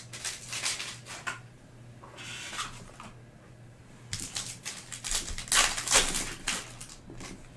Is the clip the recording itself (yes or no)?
yes